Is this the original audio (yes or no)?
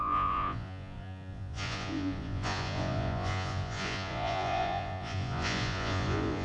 no